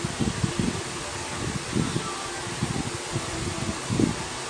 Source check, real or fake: real